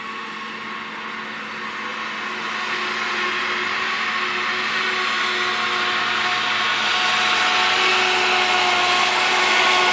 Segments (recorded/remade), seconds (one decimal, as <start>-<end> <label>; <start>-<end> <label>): 0.0-9.9 recorded